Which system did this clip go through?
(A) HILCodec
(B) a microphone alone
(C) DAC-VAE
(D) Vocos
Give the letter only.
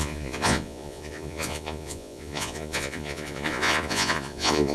D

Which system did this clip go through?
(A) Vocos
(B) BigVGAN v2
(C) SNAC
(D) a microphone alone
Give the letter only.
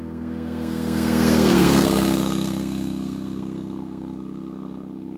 C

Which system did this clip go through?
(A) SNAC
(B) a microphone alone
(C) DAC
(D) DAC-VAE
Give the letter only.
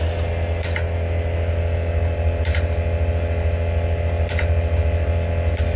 B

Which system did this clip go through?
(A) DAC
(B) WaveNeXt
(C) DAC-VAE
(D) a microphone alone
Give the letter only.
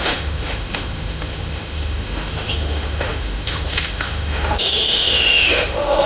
C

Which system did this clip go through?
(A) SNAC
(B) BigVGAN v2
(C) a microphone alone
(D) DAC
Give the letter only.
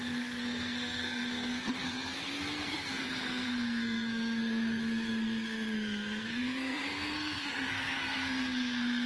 A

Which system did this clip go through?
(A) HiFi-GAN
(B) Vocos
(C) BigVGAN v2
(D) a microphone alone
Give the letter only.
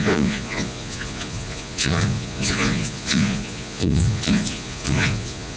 B